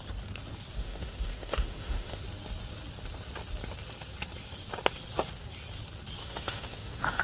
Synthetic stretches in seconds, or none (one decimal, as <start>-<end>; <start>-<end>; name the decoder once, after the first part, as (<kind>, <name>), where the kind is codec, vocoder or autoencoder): 0.8-2.2 (autoencoder, DAC-VAE); 6.2-7.2